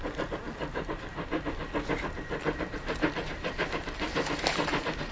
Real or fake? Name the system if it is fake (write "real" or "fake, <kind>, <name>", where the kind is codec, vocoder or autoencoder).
real